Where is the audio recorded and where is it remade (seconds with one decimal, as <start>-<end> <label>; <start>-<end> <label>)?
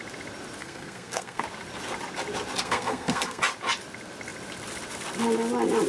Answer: 0.0-0.6 recorded; 0.6-1.4 remade; 1.4-2.6 recorded; 2.6-3.4 remade; 3.4-5.9 recorded